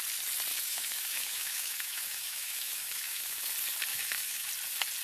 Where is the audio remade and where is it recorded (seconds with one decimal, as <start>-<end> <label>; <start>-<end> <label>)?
0.0-0.5 recorded; 0.5-3.5 remade; 3.5-3.9 recorded; 3.9-4.5 remade; 4.5-5.0 recorded